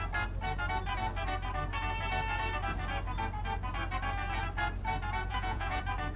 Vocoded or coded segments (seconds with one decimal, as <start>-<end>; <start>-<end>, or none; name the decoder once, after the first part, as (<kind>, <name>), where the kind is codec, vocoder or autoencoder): 5.3-5.8 (vocoder, Vocos)